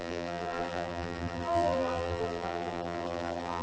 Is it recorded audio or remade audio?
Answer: remade